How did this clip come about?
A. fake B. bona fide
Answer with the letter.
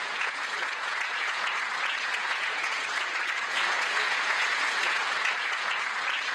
A